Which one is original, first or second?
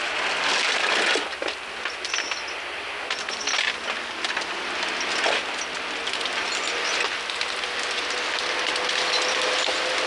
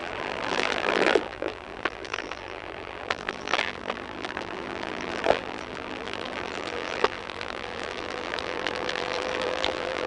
first